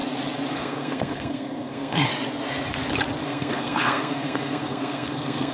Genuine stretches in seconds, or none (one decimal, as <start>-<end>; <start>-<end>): 0.0-0.5; 2.1-3.2